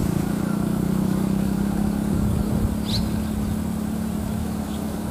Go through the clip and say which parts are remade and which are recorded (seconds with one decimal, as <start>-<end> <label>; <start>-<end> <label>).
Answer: 0.0-2.4 remade; 2.4-4.4 recorded; 4.4-5.1 remade